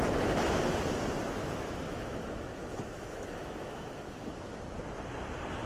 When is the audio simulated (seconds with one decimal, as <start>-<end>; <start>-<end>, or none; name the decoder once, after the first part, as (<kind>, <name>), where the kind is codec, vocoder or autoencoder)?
1.4-4.6 (autoencoder, DAC-VAE)